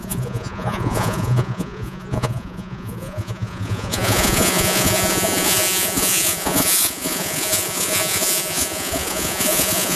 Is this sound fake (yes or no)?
yes